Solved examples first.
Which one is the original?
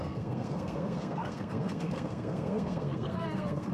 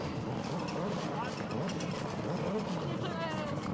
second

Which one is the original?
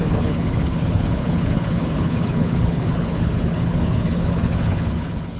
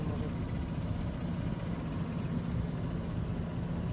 second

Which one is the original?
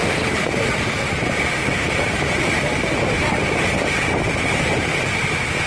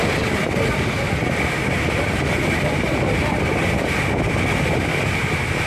second